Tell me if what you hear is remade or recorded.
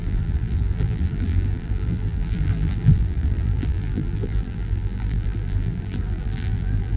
remade